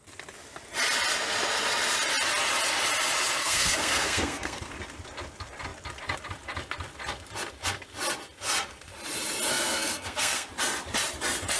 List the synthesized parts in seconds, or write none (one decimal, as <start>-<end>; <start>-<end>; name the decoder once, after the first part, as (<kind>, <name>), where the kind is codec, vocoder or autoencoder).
3.4-4.7 (codec, SNAC); 9.5-10.5